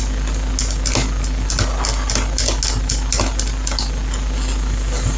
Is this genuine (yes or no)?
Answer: yes